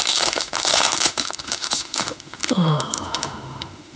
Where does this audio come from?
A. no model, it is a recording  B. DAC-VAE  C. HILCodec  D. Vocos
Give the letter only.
B